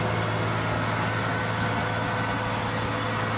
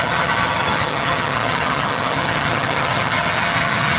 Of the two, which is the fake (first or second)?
second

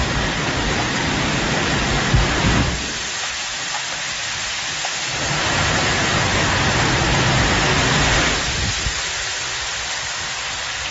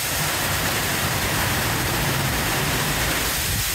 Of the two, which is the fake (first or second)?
second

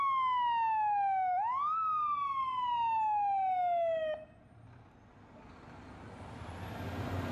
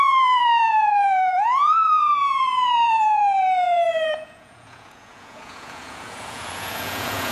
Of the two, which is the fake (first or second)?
second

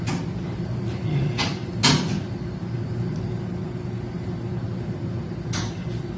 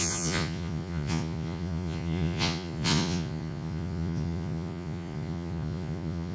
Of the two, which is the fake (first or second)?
second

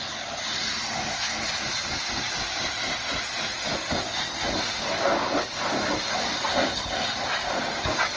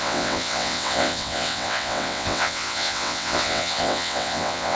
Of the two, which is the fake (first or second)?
second